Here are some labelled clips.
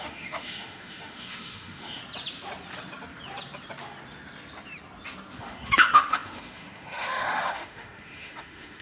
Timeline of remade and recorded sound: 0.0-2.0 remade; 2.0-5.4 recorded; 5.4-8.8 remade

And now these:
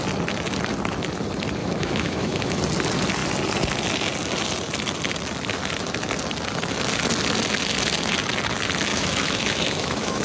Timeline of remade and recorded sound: 0.0-1.6 recorded; 1.6-2.6 remade; 2.6-8.9 recorded; 8.9-10.2 remade